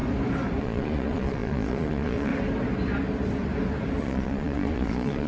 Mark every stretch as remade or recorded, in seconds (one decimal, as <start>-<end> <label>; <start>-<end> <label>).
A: 0.0-0.6 recorded; 0.6-2.3 remade; 2.3-4.0 recorded; 4.0-5.3 remade